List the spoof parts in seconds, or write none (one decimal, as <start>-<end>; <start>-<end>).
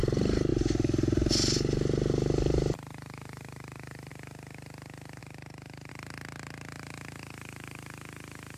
0.5-4.1; 5.2-5.9